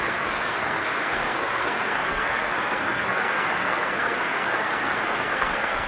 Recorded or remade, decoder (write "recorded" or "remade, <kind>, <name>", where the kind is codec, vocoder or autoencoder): remade, codec, SNAC